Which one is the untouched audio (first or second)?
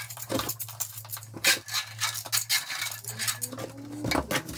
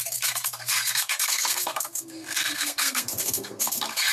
first